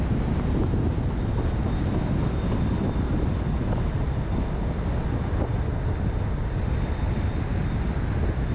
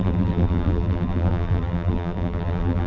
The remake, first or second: second